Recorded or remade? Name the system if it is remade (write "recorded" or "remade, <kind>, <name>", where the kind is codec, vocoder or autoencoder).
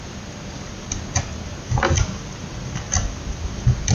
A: recorded